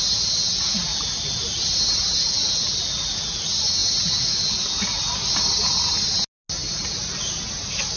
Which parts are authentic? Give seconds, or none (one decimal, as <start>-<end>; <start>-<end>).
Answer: 0.0-8.0